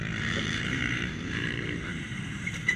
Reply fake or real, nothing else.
fake